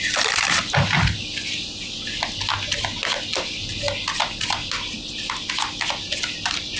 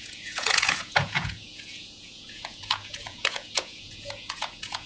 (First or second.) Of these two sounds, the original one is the first